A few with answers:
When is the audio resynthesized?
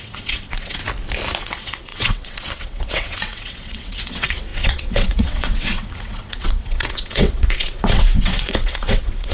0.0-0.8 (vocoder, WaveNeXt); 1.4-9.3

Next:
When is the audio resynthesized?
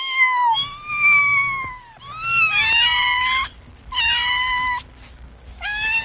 1.2-1.9 (codec, DAC); 5.1-6.0